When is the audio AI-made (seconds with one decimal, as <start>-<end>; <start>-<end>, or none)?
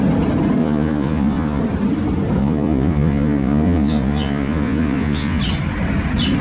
0.6-1.6; 2.4-5.4